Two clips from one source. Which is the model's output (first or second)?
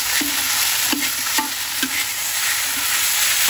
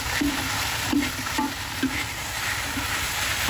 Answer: second